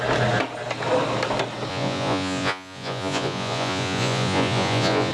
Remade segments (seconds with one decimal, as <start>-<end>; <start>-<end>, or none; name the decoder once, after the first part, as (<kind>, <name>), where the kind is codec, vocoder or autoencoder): 1.7-5.1 (vocoder, Vocos)